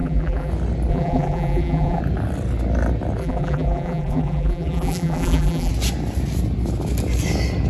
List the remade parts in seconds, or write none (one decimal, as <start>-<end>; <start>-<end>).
0.0-0.5; 0.9-2.0; 3.2-5.7